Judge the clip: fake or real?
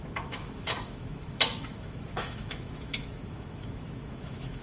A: fake